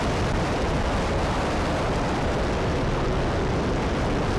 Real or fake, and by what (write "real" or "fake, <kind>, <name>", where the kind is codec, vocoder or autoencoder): real